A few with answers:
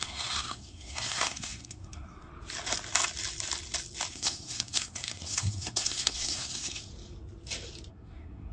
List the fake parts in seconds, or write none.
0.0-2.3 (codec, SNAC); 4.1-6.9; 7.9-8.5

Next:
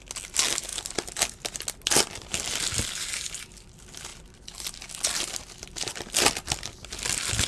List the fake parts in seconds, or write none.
none

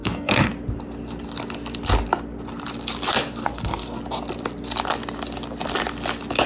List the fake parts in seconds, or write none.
0.0-0.5 (codec, SNAC); 3.4-4.0